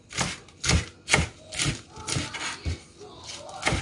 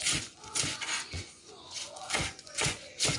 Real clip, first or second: first